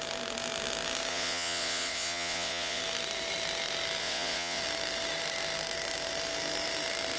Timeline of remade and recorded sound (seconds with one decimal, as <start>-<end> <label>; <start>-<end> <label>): 0.0-1.1 recorded; 1.1-2.8 remade; 2.8-4.0 recorded; 4.0-4.6 remade; 4.6-7.2 recorded